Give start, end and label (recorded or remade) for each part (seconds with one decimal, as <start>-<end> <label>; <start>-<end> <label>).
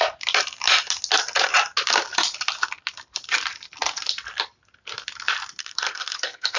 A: 0.0-5.6 recorded; 5.6-6.6 remade